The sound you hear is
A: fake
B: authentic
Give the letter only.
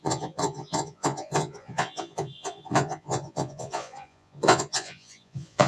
A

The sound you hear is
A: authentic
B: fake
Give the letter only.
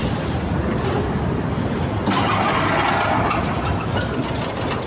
A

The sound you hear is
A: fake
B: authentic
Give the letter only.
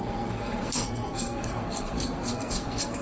A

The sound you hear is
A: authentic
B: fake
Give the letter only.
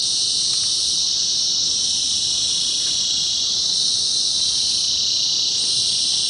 A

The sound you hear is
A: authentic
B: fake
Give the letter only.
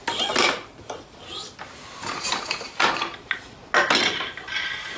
A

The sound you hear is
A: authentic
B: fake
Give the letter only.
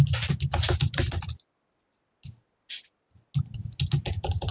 A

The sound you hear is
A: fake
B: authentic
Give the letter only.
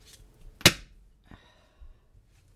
B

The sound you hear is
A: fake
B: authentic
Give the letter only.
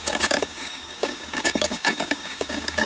A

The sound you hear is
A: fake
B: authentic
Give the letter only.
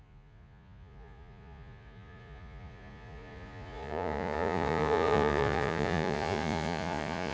A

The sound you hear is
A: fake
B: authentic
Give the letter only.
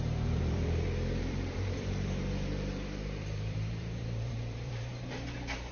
A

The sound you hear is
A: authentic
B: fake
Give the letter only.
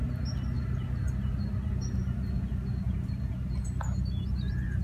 A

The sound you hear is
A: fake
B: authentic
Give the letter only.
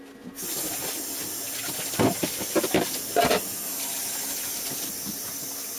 B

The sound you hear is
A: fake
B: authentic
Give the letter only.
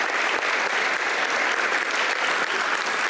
A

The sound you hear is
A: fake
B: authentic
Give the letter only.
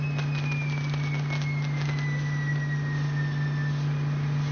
B